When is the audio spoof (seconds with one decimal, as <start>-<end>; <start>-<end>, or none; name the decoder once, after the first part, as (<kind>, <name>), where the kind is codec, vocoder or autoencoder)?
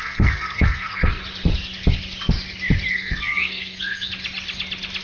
0.0-1.2 (codec, SNAC); 2.9-4.1